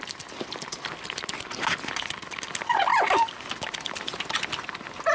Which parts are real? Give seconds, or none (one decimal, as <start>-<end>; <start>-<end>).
0.0-5.1